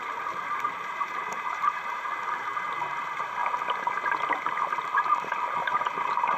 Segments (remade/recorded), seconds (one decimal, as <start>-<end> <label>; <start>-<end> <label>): 0.0-2.1 remade; 2.1-2.6 recorded; 2.6-3.4 remade; 3.4-4.9 recorded; 4.9-6.4 remade